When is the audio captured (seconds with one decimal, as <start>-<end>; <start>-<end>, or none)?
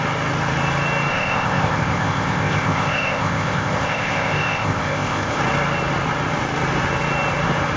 0.0-1.1; 5.4-7.8